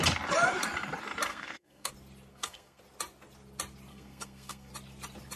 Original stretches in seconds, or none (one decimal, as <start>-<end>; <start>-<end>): 0.0-1.3; 1.9-2.3; 2.8-3.9; 4.7-5.4